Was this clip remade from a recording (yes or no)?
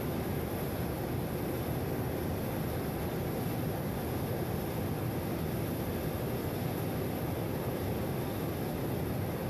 no